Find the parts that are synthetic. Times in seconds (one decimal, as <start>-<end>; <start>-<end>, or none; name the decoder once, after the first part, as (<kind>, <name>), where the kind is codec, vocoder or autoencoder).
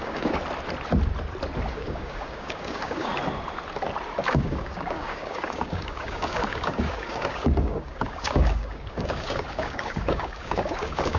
0.0-0.4 (codec, DAC); 1.7-3.1; 4.3-11.2